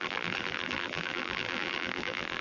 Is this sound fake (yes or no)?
yes